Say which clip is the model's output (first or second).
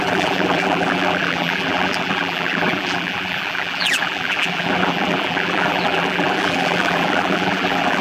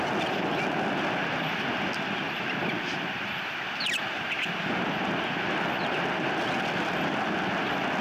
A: first